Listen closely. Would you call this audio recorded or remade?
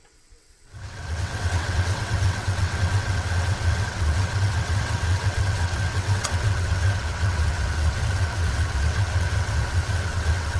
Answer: remade